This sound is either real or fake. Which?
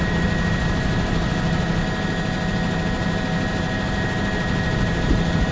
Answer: real